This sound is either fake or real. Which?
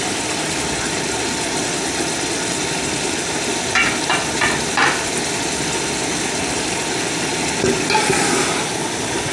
real